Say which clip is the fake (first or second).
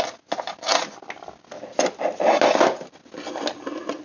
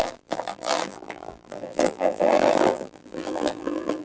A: second